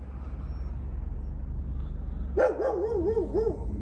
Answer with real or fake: real